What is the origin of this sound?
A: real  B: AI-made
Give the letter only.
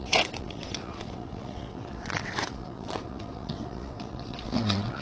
B